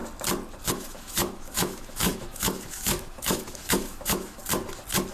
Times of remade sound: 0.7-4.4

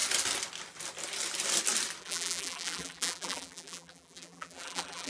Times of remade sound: 2.0-5.1

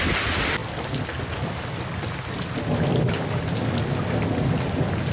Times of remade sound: none

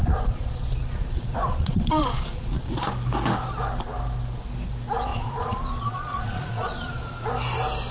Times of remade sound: 0.0-2.7; 5.1-7.3